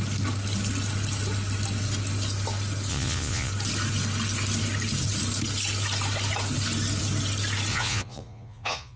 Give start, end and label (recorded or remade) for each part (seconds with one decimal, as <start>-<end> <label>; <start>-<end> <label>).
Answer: 0.0-2.9 recorded; 2.9-3.5 remade; 3.5-7.7 recorded; 7.7-9.0 remade